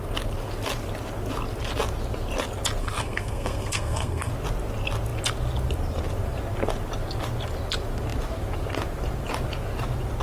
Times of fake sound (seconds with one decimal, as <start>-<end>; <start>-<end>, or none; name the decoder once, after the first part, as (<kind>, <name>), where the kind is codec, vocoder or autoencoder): 2.8-4.3 (codec, SNAC)